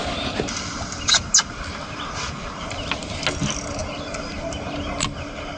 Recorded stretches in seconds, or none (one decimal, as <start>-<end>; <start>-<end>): 0.0-5.6